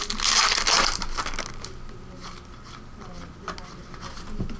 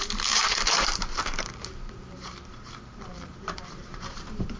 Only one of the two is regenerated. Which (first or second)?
second